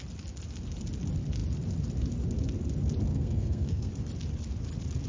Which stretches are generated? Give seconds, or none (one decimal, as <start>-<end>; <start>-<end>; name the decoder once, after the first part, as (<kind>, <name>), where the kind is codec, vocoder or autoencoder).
3.1-3.9 (codec, SNAC)